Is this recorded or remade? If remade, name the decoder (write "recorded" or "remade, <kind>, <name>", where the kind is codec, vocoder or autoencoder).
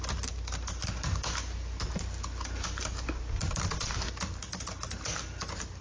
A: recorded